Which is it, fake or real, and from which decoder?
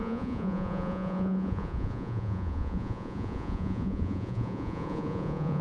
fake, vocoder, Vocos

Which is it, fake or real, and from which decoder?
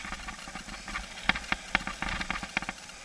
real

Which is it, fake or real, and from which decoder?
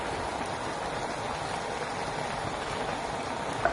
real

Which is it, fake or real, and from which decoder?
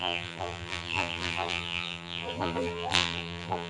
fake, vocoder, BigVGAN v2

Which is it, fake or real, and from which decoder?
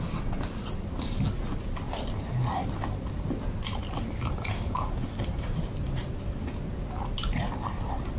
real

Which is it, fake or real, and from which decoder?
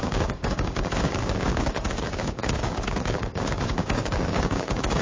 fake, codec, DAC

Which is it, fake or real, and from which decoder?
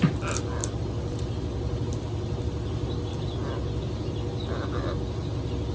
real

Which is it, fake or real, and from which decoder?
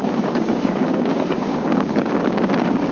fake, codec, DAC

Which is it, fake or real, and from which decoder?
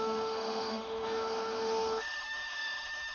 fake, autoencoder, DAC-VAE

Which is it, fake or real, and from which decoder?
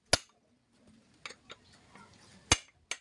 real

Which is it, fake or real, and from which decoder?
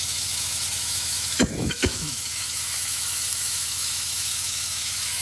fake, autoencoder, DAC-VAE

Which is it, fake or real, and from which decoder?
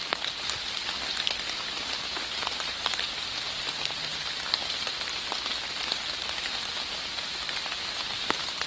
real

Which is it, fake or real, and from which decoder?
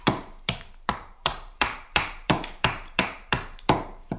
fake, vocoder, BigVGAN v2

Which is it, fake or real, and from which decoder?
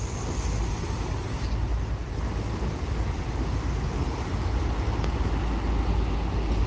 real